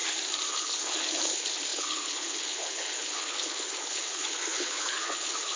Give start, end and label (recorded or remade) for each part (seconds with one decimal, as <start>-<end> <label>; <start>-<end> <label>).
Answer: 0.0-0.5 recorded; 0.5-5.6 remade